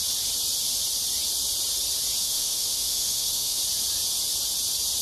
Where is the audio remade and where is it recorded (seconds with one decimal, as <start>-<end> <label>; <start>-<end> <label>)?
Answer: 0.0-2.2 recorded; 2.2-3.6 remade; 3.6-5.0 recorded